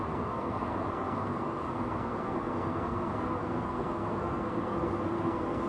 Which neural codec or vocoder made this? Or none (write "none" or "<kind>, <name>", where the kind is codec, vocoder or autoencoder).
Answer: codec, SNAC